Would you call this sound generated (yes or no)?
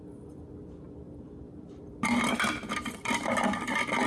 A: yes